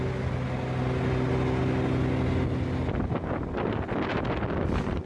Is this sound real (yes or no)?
yes